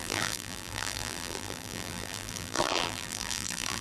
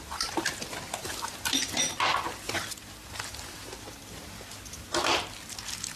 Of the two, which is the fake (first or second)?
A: first